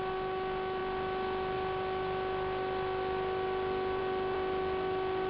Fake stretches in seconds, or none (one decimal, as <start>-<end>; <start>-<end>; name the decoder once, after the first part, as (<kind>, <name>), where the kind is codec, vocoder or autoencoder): none